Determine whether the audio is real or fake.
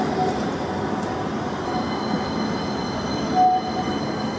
real